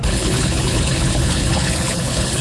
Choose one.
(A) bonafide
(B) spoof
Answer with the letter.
B